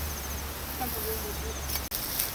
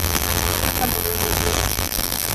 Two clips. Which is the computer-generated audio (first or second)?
second